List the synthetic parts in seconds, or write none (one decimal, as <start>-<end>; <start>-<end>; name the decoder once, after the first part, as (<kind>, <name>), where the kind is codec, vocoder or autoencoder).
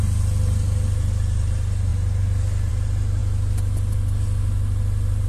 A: none